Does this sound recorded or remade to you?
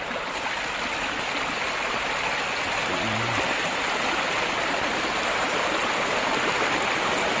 recorded